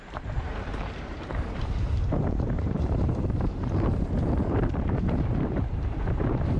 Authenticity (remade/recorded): remade